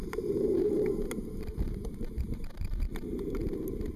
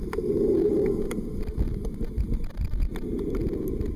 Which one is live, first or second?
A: second